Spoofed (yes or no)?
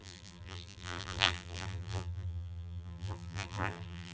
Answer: yes